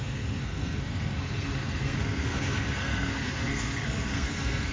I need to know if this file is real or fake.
fake